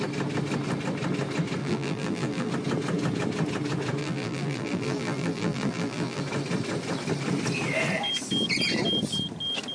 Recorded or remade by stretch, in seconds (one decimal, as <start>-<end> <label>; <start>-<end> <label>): 0.0-1.6 recorded; 1.6-2.5 remade; 2.5-4.0 recorded; 4.0-6.2 remade; 6.2-9.7 recorded